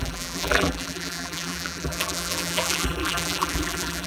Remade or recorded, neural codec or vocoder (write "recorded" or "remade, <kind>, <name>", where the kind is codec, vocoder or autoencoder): remade, vocoder, BigVGAN v2